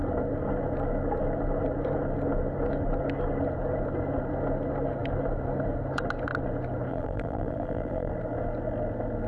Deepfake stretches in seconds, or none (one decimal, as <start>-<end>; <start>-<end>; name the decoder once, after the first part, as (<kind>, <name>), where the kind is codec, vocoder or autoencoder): 6.9-8.1 (vocoder, BigVGAN v2)